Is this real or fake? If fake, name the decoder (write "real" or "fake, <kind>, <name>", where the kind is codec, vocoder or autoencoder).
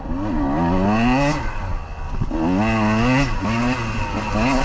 real